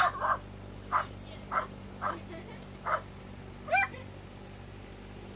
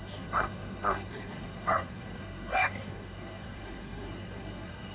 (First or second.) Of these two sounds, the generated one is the second